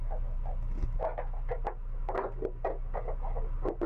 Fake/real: real